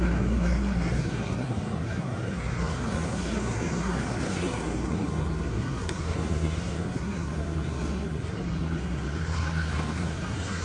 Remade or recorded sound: remade